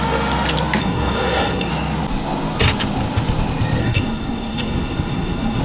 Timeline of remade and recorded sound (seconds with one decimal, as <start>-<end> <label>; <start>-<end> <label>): 0.0-0.8 recorded; 0.8-1.7 remade; 1.7-3.8 recorded; 3.8-5.6 remade